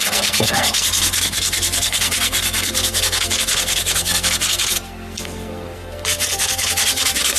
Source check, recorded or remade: remade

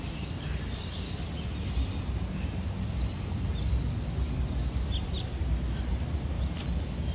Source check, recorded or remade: recorded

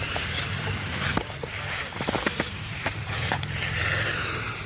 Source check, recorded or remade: remade